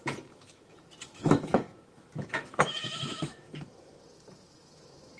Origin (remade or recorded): remade